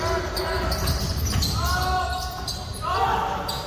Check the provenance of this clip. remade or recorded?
recorded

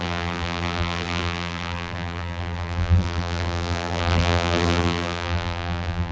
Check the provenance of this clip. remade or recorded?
remade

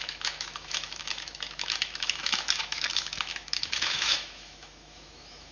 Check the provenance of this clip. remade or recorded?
remade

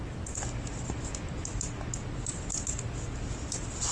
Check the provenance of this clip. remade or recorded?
recorded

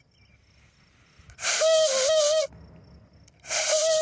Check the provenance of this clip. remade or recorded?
recorded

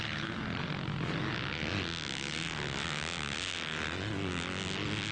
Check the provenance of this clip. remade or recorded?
recorded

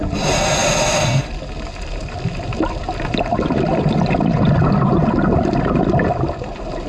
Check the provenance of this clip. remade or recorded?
recorded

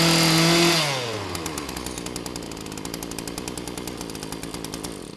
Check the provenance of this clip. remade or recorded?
recorded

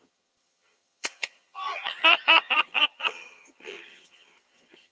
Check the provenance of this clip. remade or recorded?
remade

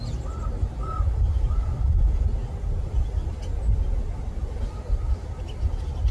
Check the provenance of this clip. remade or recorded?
recorded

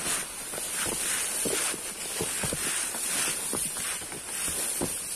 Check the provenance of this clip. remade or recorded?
recorded